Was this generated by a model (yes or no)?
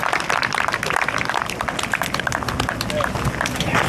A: no